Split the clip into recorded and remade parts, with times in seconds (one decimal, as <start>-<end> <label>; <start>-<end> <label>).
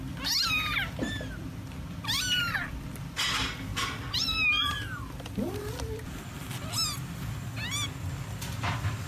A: 0.0-9.1 recorded